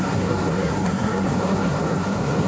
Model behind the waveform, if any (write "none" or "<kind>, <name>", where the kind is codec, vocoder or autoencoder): codec, SNAC